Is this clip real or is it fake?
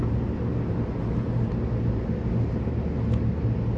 real